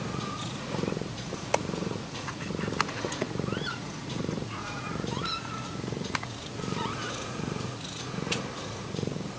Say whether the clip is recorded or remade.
remade